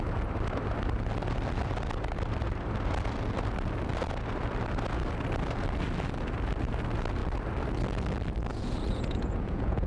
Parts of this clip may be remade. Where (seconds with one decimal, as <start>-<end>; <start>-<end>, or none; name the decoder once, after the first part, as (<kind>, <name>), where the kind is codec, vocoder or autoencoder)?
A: 8.5-9.9 (vocoder, Vocos)